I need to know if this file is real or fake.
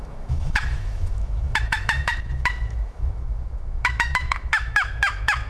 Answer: fake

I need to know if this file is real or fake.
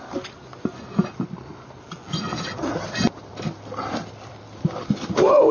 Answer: real